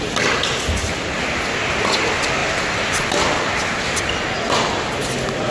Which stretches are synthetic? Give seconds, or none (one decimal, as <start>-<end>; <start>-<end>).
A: none